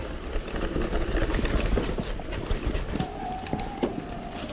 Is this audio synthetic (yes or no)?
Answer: yes